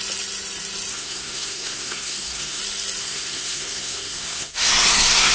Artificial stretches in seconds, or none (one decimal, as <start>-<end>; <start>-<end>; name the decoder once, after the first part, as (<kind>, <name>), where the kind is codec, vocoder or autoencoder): 0.9-2.6 (codec, SNAC); 3.0-5.3